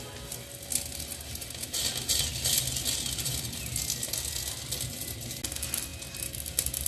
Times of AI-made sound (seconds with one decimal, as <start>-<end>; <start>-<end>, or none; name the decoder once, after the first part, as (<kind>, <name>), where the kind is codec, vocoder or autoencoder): none